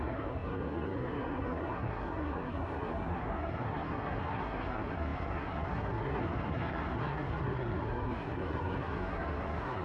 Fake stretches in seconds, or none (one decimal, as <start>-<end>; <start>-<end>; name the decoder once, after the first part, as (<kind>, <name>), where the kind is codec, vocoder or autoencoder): 0.0-9.8 (codec, SNAC)